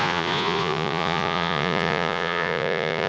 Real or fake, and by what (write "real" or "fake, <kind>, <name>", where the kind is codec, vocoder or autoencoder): fake, vocoder, Vocos